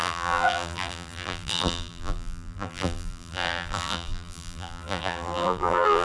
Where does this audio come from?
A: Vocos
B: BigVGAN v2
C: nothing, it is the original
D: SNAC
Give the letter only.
B